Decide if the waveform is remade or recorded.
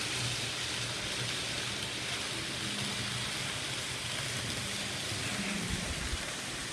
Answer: recorded